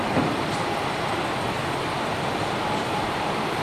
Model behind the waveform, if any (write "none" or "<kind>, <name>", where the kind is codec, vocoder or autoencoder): vocoder, BigVGAN v2